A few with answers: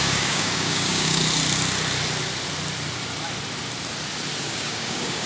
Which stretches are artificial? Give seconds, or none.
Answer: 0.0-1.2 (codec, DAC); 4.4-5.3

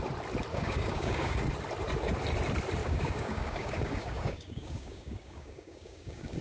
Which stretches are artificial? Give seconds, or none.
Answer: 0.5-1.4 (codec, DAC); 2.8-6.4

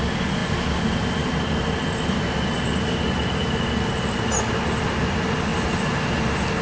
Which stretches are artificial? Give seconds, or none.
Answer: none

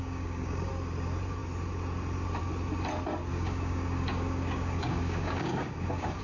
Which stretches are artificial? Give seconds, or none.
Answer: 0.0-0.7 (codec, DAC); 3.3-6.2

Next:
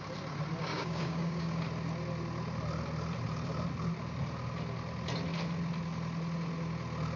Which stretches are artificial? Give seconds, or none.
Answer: 0.7-1.6 (codec, DAC)

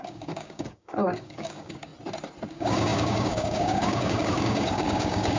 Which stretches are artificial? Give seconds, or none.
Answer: 0.0-1.9 (codec, DAC); 2.5-5.4